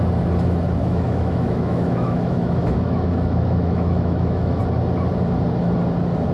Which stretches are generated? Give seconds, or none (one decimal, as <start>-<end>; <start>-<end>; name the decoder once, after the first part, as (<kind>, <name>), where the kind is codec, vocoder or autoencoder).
0.8-4.6 (autoencoder, DAC-VAE)